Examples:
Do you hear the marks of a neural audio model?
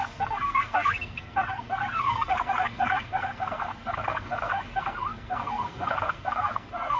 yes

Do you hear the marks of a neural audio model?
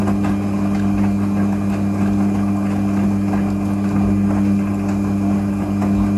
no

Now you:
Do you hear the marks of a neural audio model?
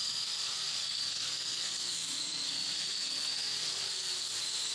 yes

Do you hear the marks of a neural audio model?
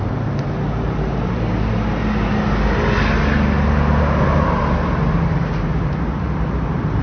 no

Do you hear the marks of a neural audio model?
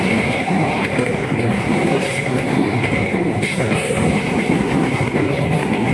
yes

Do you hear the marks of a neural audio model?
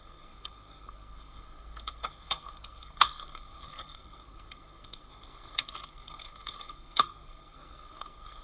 yes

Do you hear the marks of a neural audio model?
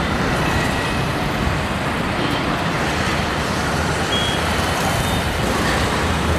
yes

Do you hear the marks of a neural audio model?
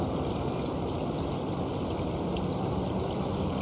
no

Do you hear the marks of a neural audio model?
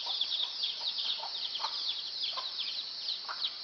no